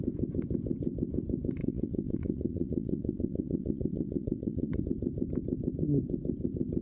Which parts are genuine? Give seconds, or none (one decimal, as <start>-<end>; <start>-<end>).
0.0-1.6; 4.8-6.8